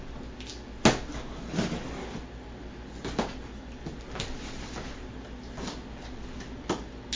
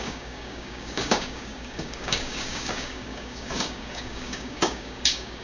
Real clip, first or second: first